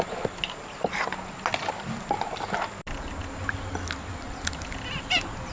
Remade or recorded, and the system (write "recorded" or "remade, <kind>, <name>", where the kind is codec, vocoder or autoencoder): recorded